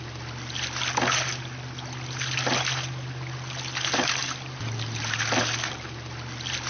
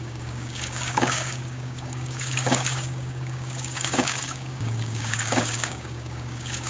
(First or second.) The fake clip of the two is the second